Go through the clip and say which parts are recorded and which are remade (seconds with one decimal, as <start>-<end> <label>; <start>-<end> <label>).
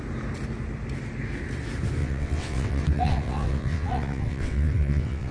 0.0-2.0 recorded; 2.0-5.3 remade